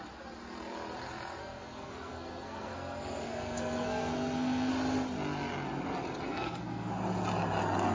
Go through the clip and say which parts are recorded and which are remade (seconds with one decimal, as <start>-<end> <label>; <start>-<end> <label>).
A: 0.0-1.4 recorded; 1.4-4.7 remade; 4.7-6.3 recorded; 6.3-6.9 remade; 6.9-7.9 recorded

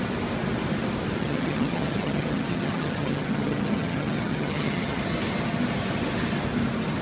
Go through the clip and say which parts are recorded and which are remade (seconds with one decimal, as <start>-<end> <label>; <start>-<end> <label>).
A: 0.0-1.2 recorded; 1.2-5.0 remade; 5.0-7.0 recorded

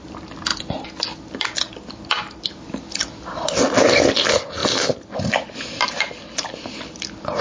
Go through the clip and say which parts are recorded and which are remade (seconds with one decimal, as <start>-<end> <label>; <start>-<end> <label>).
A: 0.0-0.5 recorded; 0.5-1.9 remade; 1.9-3.0 recorded; 3.0-3.5 remade; 3.5-7.4 recorded

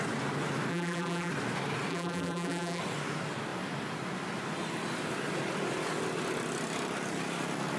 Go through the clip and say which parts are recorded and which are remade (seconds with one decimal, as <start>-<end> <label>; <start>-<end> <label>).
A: 0.0-0.7 recorded; 0.7-1.3 remade; 1.3-1.9 recorded; 1.9-2.8 remade; 2.8-7.8 recorded

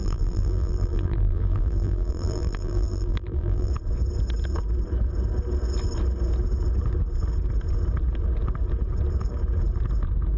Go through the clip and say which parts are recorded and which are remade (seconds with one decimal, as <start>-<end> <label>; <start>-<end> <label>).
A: 0.0-3.7 remade; 3.7-10.4 recorded

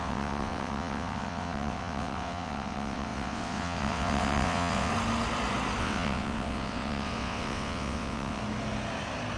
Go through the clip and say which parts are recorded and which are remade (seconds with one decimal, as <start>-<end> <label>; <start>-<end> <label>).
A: 0.0-4.9 remade; 4.9-5.8 recorded; 5.8-8.4 remade; 8.4-9.4 recorded